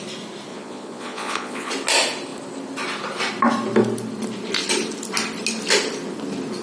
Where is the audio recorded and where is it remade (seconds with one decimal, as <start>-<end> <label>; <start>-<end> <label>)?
0.0-0.5 recorded; 0.5-1.7 remade; 1.7-6.6 recorded